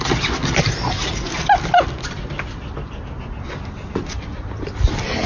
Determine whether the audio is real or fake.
real